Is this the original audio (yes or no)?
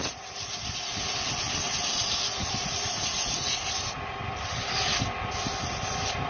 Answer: yes